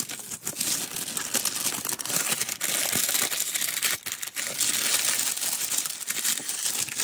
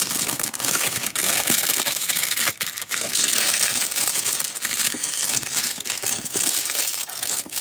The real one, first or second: first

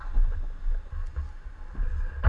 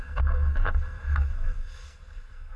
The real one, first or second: first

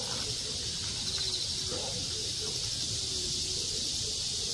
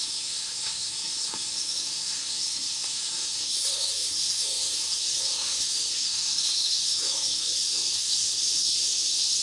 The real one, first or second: first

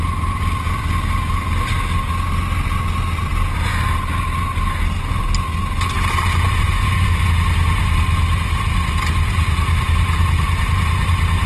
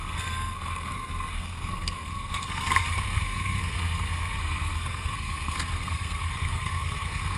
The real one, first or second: first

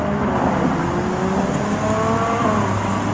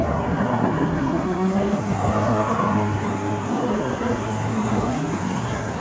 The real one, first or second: first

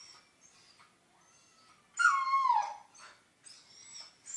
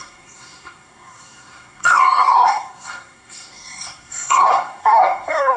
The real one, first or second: first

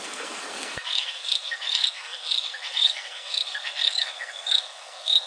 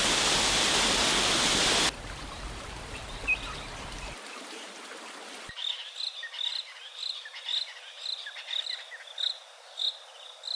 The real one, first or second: second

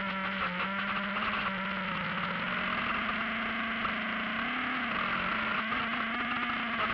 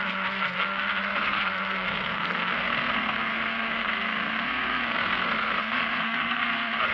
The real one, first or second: first